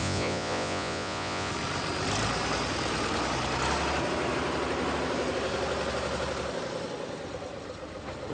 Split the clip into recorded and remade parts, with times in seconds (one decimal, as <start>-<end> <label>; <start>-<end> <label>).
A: 0.0-1.5 remade; 1.5-8.3 recorded